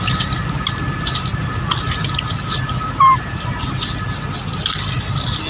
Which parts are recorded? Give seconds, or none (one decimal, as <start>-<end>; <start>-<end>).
0.0-5.5